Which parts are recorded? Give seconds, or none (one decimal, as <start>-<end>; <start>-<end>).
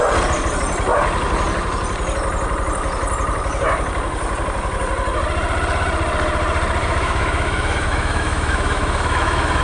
0.0-6.8